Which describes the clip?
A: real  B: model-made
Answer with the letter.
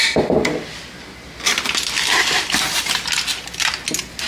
A